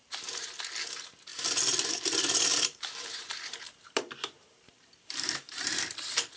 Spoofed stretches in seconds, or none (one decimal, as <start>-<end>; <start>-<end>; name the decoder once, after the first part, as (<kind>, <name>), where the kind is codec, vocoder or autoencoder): 0.0-0.5 (vocoder, BigVGAN v2); 2.5-5.8